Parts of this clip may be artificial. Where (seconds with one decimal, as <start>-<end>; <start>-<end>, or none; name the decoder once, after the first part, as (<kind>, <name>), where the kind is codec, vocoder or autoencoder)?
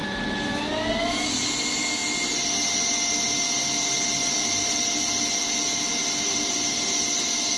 none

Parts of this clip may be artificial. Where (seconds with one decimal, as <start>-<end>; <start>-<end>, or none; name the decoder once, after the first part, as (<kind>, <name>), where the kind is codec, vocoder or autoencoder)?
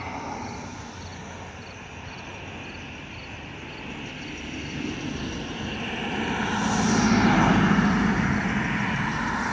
none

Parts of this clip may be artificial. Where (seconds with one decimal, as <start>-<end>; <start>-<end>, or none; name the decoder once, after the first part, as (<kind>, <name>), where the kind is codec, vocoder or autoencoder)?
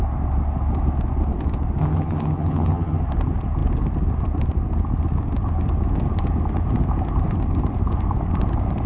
1.8-3.0 (vocoder, HiFi-GAN)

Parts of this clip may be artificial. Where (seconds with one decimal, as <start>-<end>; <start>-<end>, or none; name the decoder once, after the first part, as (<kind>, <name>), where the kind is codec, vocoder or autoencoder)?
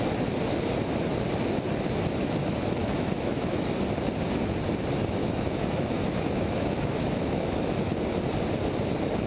2.8-3.7 (autoencoder, DAC-VAE); 5.2-7.7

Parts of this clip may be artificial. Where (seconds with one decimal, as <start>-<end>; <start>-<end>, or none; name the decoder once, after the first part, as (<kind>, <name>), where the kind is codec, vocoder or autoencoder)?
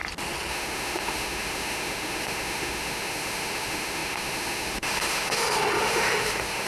0.5-6.7 (autoencoder, DAC-VAE)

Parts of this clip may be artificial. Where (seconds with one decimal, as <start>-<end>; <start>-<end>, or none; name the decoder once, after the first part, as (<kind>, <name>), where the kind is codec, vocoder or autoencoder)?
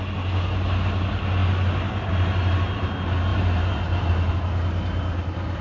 3.3-4.3 (vocoder, BigVGAN v2)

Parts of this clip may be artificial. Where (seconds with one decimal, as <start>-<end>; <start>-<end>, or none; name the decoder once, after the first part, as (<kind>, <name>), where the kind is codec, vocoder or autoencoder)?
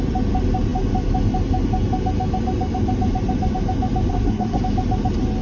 4.1-4.6 (codec, SNAC)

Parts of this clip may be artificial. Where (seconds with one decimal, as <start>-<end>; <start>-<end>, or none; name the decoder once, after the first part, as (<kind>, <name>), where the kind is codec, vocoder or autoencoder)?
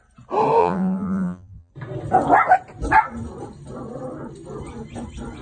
0.6-1.7 (vocoder, BigVGAN v2)